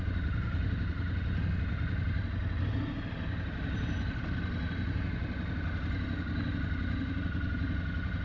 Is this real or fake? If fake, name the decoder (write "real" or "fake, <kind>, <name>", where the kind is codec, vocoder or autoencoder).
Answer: real